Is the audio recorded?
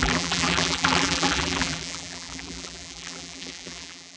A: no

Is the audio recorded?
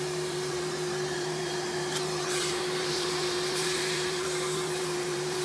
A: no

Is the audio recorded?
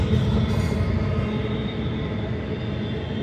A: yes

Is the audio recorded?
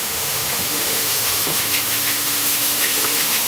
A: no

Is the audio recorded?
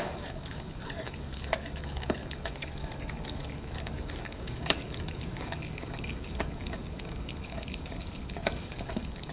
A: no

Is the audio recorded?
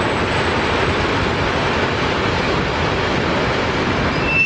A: yes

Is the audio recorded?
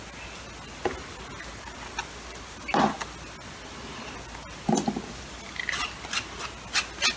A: yes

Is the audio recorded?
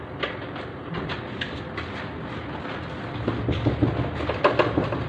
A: yes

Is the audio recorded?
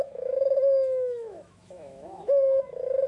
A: no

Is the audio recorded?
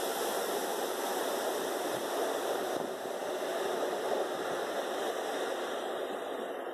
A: yes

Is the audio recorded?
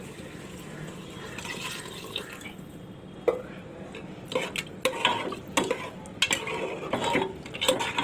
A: yes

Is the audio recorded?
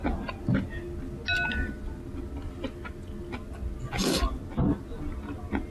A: yes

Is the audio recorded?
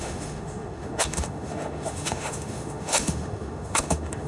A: no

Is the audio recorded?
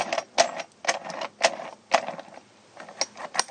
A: yes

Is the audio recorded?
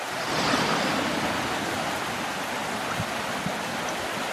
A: yes